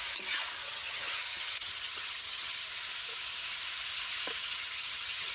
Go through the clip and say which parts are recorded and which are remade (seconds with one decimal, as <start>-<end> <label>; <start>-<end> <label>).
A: 0.0-0.6 recorded; 0.6-2.6 remade; 2.6-4.4 recorded; 4.4-5.3 remade